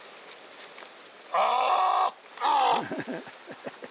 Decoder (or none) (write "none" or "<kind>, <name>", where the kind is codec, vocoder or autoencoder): none